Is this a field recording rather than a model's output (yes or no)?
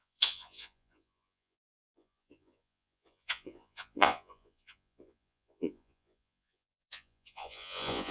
no